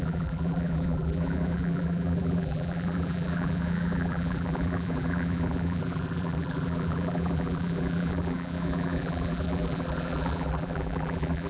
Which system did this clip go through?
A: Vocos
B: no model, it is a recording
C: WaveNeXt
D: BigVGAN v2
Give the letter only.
D